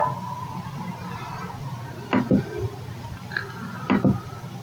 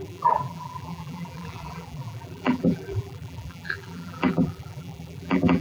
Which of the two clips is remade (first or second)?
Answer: second